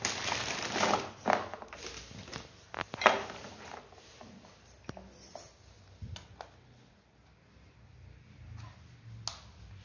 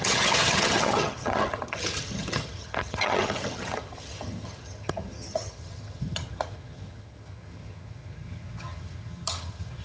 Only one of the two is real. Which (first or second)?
first